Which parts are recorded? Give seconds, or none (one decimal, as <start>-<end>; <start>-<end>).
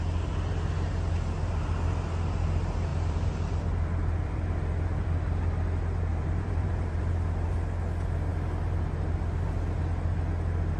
0.0-2.9; 5.2-6.1; 7.1-10.8